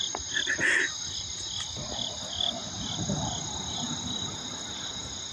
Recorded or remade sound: recorded